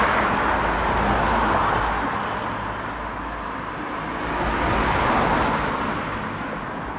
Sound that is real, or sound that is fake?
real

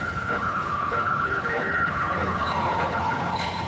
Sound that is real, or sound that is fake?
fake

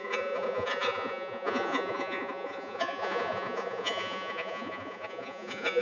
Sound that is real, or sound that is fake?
fake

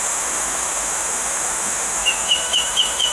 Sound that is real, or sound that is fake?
fake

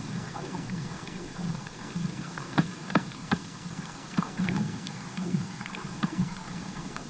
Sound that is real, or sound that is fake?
fake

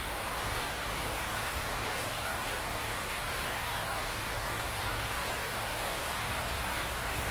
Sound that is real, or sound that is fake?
fake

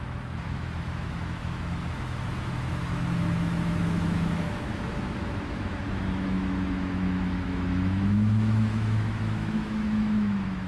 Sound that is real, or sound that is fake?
fake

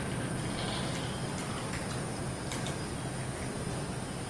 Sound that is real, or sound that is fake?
real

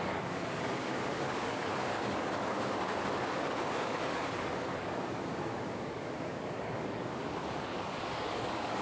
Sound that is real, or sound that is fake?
fake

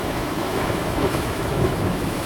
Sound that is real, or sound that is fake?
fake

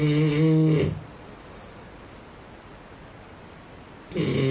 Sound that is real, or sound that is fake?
real